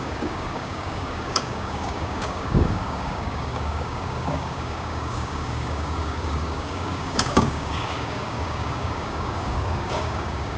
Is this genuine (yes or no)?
no